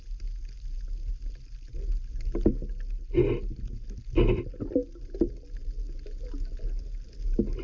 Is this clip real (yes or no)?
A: yes